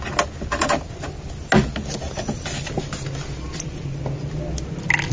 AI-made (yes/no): no